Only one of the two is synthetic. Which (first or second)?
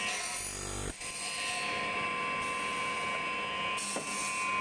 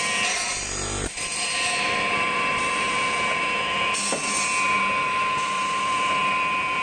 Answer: second